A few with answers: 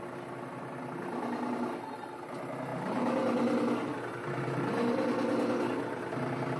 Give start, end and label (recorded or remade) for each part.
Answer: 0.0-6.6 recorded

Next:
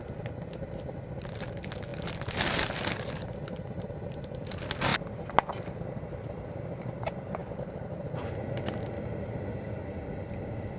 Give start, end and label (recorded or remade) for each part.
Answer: 0.0-10.8 recorded

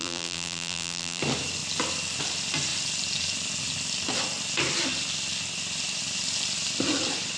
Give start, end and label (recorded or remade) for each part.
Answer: 0.0-1.2 remade; 1.2-7.4 recorded

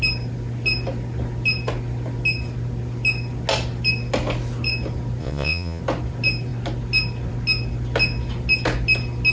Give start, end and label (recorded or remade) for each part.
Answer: 0.0-5.2 recorded; 5.2-5.8 remade; 5.8-9.3 recorded

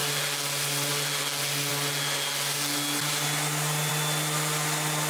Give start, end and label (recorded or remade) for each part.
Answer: 0.0-5.1 recorded

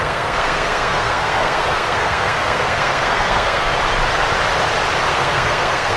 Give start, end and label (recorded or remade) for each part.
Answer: 0.0-3.7 remade; 3.7-5.1 recorded; 5.1-6.0 remade